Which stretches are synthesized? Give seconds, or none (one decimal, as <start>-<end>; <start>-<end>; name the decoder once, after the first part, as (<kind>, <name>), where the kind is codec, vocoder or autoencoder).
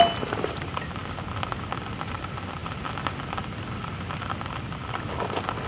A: none